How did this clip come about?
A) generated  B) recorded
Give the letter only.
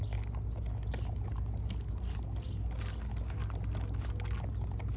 B